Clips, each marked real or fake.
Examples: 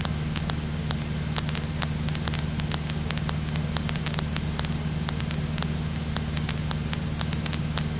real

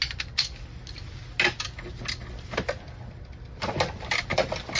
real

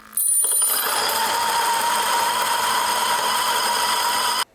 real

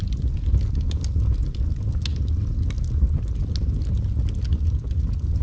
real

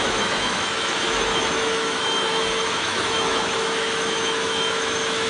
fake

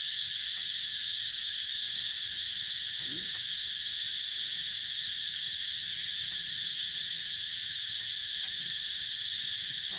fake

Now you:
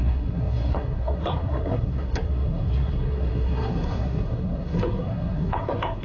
fake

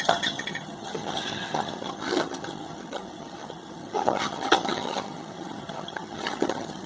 fake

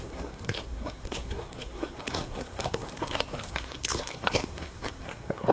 fake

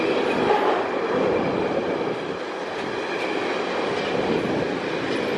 real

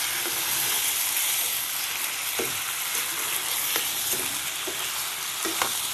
real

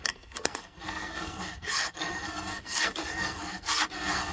fake